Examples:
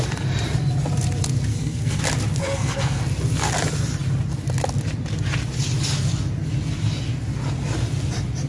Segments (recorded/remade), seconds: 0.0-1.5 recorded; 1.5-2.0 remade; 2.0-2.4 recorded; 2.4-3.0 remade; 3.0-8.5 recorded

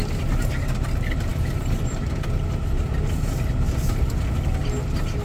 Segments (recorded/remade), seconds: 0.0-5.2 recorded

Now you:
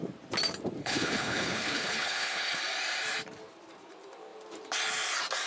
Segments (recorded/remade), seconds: 0.0-0.8 recorded; 0.8-2.6 remade; 2.6-5.5 recorded

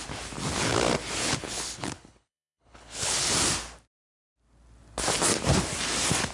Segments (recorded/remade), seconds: 0.0-1.2 recorded; 1.2-3.3 remade; 3.3-6.3 recorded

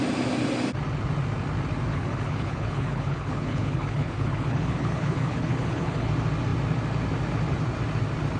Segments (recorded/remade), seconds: 0.0-1.9 recorded; 1.9-6.1 remade; 6.1-8.4 recorded